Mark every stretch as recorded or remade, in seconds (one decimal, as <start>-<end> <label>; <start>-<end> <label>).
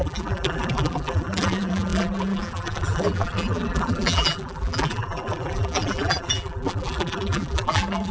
0.0-8.1 remade